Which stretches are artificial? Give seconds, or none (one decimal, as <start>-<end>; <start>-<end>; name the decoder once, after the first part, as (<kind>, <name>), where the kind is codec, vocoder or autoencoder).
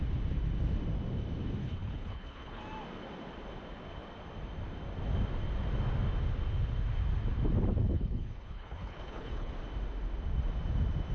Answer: 1.6-2.6 (codec, HILCodec); 7.8-9.5